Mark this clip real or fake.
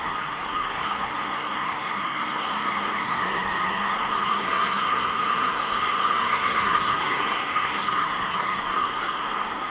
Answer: fake